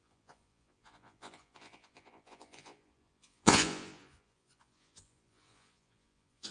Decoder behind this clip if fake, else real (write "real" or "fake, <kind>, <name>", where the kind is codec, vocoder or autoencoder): fake, vocoder, Vocos